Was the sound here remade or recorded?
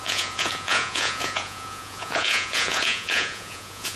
remade